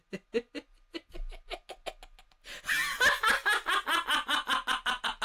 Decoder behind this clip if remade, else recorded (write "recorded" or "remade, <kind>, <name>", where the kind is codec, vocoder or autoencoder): recorded